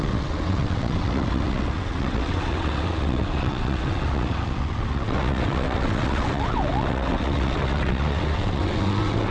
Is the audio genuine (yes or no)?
no